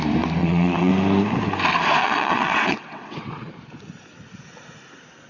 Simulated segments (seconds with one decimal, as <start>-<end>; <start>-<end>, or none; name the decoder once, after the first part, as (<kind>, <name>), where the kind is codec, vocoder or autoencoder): 0.4-0.9 (vocoder, WaveNeXt); 2.0-3.5